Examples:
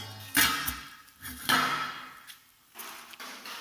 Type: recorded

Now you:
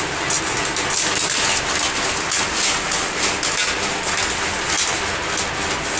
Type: recorded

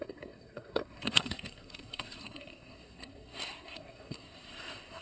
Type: remade